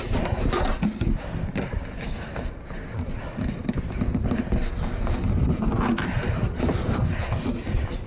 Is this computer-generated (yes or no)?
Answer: no